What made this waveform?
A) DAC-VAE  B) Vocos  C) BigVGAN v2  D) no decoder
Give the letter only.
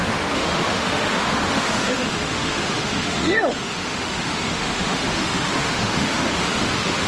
A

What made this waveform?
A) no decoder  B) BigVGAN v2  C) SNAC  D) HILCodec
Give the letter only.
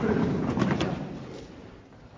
A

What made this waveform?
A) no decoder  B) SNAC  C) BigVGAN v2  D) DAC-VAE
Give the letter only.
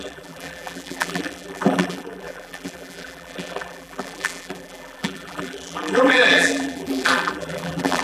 C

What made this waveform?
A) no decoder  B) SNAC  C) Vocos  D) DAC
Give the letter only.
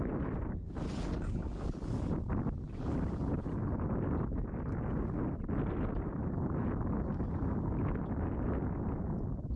A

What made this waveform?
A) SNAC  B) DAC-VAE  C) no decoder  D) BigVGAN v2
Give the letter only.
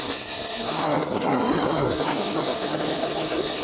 A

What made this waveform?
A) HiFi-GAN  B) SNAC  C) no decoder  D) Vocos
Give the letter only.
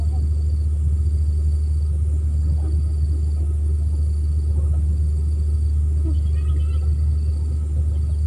C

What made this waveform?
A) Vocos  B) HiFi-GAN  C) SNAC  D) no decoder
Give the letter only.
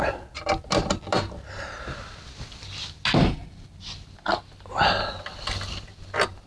D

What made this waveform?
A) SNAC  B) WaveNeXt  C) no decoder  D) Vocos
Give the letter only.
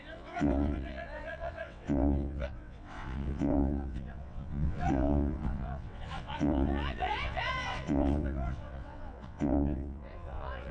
B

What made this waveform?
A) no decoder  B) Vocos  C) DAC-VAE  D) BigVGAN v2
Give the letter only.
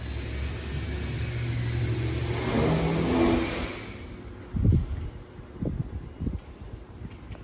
A